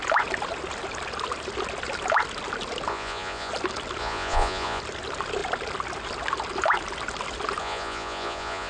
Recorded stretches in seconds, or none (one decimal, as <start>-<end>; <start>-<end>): 0.0-2.9; 3.5-4.0; 4.8-7.6